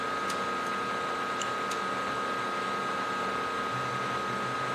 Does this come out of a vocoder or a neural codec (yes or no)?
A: no